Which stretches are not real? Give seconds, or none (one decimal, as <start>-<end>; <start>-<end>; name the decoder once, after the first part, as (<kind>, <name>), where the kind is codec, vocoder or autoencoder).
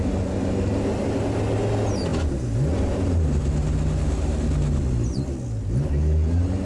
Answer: none